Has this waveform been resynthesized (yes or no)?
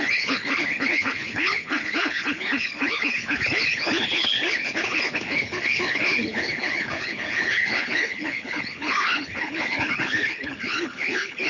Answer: yes